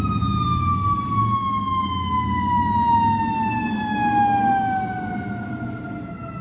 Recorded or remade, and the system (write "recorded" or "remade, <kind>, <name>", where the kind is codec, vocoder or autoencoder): recorded